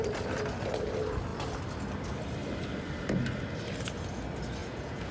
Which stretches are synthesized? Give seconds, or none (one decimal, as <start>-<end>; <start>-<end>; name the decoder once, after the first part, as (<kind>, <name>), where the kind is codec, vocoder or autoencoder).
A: 4.6-5.1 (vocoder, Vocos)